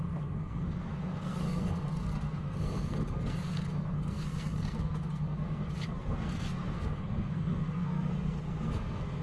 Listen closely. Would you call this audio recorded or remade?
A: remade